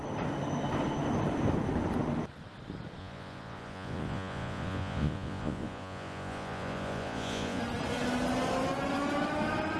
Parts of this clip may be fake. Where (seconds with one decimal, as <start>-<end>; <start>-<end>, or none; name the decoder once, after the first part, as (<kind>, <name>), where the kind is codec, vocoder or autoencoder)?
3.0-7.6 (vocoder, Vocos)